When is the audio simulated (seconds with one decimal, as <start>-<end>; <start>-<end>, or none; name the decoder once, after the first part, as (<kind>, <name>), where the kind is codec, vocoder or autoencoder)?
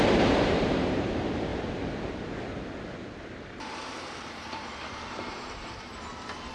0.0-1.5 (vocoder, BigVGAN v2); 3.1-5.9